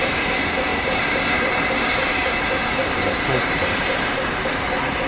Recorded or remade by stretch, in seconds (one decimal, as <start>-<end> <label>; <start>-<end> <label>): 0.0-0.7 recorded; 0.7-2.3 remade; 2.3-2.8 recorded; 2.8-4.5 remade; 4.5-5.1 recorded